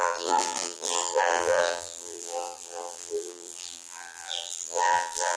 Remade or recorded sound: remade